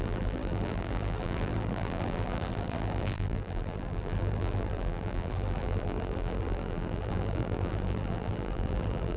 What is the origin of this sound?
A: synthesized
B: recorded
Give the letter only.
A